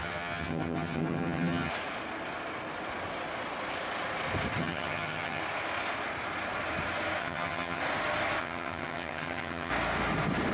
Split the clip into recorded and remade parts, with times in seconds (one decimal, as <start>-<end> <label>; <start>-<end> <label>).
0.0-1.7 remade; 1.7-4.6 recorded; 4.6-5.4 remade; 5.4-7.2 recorded; 7.2-7.8 remade; 7.8-8.4 recorded; 8.4-9.7 remade; 9.7-10.5 recorded